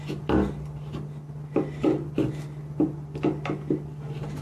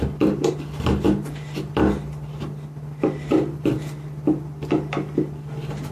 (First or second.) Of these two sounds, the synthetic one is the second